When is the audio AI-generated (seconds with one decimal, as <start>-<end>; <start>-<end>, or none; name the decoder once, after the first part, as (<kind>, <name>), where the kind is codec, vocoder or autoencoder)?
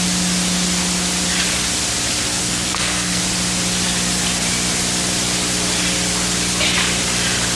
2.3-3.2 (codec, SNAC)